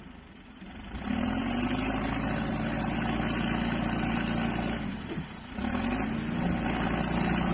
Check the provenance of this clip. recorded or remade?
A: recorded